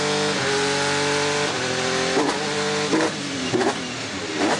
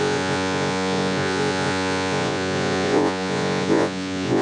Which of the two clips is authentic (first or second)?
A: first